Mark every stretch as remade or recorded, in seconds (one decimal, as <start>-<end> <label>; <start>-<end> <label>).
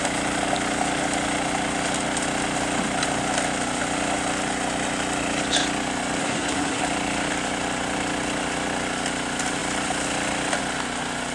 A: 0.0-6.2 recorded; 6.2-6.8 remade; 6.8-11.3 recorded